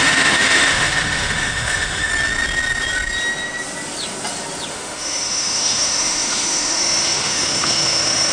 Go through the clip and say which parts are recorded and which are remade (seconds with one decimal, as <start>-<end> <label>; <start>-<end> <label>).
0.0-2.1 remade; 2.1-4.7 recorded; 4.7-8.3 remade